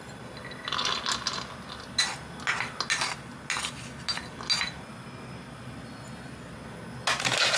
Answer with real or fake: real